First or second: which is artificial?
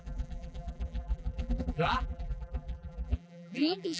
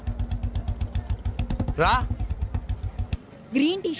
first